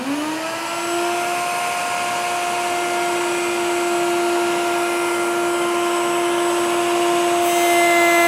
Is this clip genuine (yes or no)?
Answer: yes